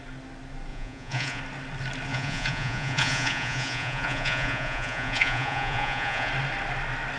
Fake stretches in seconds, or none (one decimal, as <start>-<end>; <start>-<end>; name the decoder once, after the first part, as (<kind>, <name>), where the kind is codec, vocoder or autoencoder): 0.7-1.4 (vocoder, Vocos); 2.1-6.3